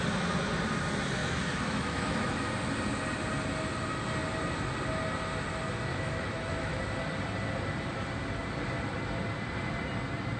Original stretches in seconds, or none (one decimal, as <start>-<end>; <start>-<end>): 0.0-1.2; 2.4-5.9; 6.8-10.4